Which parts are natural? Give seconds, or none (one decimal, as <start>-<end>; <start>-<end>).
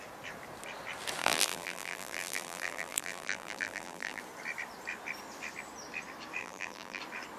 0.0-1.2; 4.2-6.4; 7.0-7.4